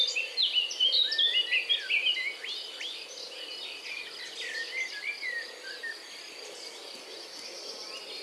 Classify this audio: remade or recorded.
recorded